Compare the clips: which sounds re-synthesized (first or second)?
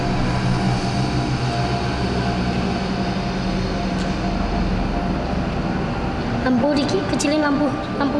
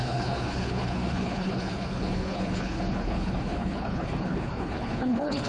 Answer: second